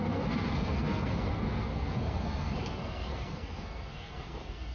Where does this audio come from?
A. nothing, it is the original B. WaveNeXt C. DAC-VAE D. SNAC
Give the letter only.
D